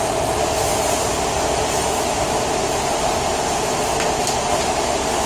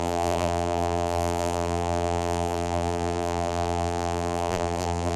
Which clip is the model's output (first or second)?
second